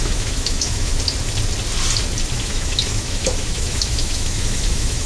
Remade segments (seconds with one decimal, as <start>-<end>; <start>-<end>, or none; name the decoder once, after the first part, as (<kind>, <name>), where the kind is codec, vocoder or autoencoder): 0.0-0.9 (autoencoder, DAC-VAE); 2.3-5.1